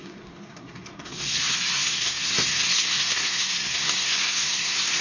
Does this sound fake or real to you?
fake